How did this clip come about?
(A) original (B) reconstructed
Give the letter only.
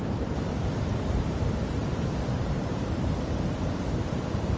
B